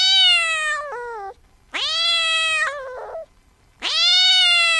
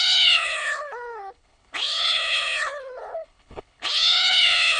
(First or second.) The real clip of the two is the first